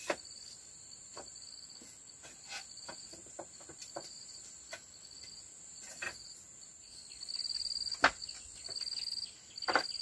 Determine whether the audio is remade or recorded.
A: recorded